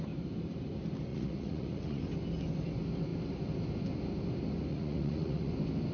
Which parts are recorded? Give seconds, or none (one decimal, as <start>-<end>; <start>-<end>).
0.0-1.1; 2.0-4.7; 5.5-5.9